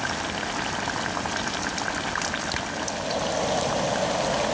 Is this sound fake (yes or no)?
no